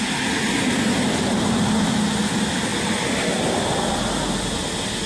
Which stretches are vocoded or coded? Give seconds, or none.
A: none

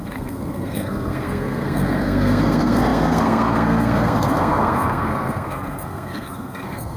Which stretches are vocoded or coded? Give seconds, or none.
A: 0.0-7.0 (codec, SNAC)

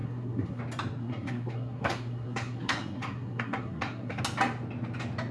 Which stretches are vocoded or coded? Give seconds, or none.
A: 0.0-0.6 (codec, SNAC); 1.0-4.2

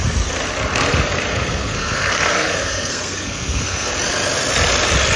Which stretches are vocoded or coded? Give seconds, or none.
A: 1.3-3.9 (codec, SNAC)

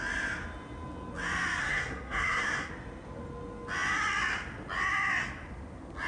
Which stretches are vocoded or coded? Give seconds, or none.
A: 1.6-2.7 (codec, SNAC)